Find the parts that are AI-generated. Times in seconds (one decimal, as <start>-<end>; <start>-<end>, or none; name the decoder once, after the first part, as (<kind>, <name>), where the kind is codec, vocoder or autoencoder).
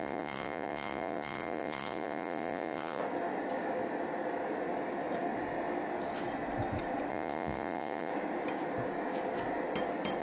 0.0-3.0 (vocoder, Vocos); 7.1-8.1